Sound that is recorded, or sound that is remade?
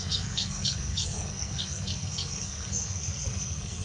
remade